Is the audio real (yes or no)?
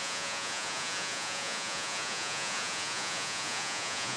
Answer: no